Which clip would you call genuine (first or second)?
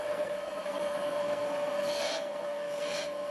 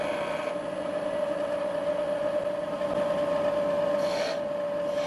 second